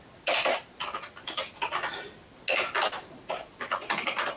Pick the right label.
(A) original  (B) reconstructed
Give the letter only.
A